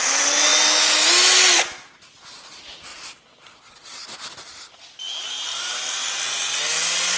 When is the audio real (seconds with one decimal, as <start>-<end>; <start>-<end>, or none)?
0.0-7.2